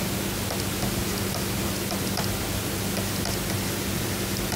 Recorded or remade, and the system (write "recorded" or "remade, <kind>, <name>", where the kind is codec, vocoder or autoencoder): recorded